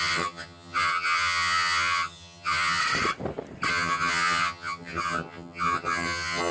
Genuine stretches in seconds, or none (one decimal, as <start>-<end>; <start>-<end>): 2.8-3.7